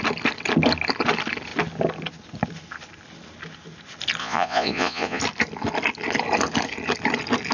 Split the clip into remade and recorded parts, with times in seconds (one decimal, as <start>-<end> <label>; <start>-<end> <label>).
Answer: 0.0-4.2 recorded; 4.2-5.2 remade; 5.2-7.5 recorded